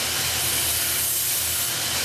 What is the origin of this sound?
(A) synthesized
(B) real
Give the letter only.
B